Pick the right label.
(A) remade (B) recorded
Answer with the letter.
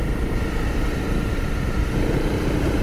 A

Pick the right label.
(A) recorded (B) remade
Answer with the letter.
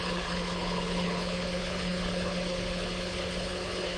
B